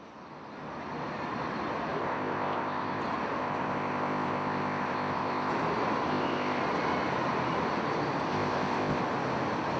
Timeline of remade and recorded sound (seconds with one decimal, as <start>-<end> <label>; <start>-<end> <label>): 0.0-2.0 recorded; 2.0-3.0 remade; 3.0-3.4 recorded; 3.4-5.5 remade; 5.5-6.1 recorded; 6.1-6.6 remade; 6.6-8.3 recorded; 8.3-9.0 remade; 9.0-9.8 recorded

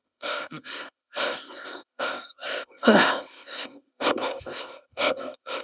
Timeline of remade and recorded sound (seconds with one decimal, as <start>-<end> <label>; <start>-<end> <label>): 0.0-5.6 remade

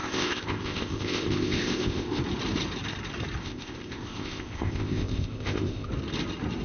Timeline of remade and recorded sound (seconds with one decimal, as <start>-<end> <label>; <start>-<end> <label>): 0.0-2.2 remade; 2.2-3.4 recorded; 3.4-5.9 remade; 5.9-6.6 recorded

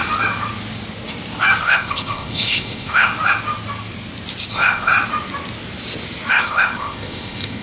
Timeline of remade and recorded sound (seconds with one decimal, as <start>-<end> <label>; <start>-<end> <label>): 0.0-1.6 recorded; 1.6-3.1 remade; 3.1-4.5 recorded; 4.5-4.9 remade; 4.9-6.3 recorded; 6.3-7.6 remade

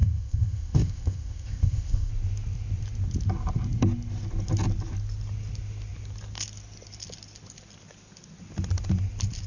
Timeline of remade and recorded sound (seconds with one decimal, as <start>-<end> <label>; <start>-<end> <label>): 0.0-2.1 remade; 2.1-9.5 recorded

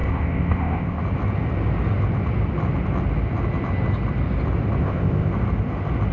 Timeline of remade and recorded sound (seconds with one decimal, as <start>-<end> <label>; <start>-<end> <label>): 0.0-1.0 remade; 1.0-4.8 recorded; 4.8-5.3 remade; 5.3-6.1 recorded